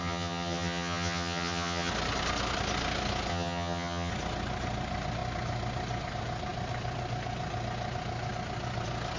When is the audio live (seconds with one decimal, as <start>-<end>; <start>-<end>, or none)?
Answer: 1.9-3.3; 4.1-9.2